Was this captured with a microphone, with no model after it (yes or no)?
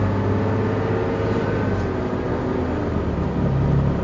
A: yes